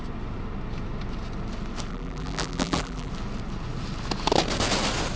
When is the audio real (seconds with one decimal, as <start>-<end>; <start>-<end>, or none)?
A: 0.0-1.9; 3.1-5.2